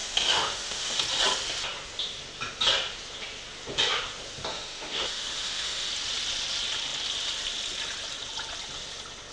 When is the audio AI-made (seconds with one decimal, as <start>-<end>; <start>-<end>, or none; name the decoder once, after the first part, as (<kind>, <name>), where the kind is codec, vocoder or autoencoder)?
0.0-1.0 (autoencoder, DAC-VAE); 4.5-5.9